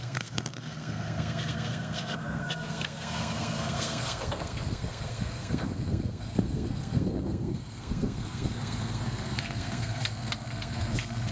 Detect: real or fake fake